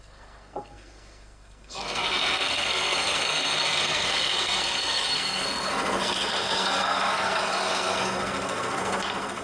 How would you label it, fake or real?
fake